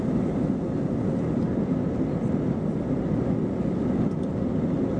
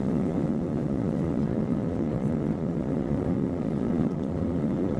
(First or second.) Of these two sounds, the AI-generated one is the second